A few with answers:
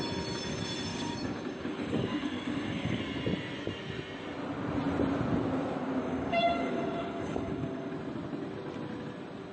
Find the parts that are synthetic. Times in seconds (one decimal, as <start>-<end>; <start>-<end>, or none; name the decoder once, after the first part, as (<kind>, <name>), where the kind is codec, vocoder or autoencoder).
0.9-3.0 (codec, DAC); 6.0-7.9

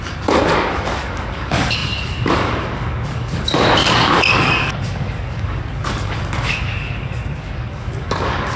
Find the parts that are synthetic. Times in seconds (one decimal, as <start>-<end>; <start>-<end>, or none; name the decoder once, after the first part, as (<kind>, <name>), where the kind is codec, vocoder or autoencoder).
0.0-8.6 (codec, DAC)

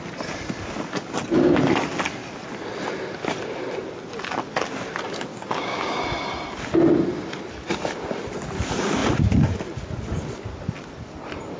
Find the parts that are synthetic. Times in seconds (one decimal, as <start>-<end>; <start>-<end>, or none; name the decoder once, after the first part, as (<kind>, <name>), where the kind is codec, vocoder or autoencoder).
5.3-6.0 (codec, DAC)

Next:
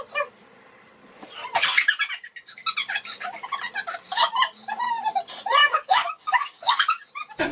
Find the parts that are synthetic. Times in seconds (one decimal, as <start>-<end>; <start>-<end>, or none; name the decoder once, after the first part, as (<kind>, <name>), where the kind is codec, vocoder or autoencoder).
5.6-7.0 (codec, DAC)

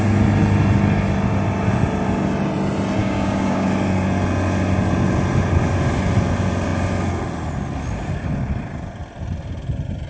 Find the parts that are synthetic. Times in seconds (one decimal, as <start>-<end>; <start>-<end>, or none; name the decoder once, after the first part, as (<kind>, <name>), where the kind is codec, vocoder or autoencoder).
3.0-3.7 (codec, DAC)

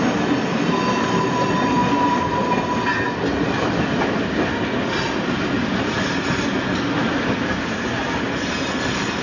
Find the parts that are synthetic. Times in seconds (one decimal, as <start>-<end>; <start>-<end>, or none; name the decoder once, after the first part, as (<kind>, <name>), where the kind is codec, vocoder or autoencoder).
none